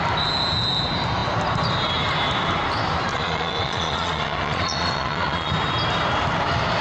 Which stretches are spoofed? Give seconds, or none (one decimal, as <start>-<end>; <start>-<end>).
3.1-5.5